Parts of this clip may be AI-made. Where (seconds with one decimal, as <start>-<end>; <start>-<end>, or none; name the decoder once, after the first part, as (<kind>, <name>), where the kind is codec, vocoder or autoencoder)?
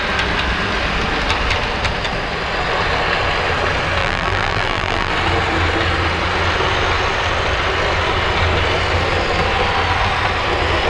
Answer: 4.0-5.1 (vocoder, BigVGAN v2)